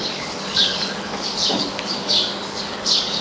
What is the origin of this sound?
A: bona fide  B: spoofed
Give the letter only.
B